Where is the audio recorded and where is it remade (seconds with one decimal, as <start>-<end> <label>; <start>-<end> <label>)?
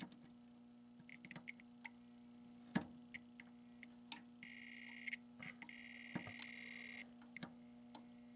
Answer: 0.0-8.4 recorded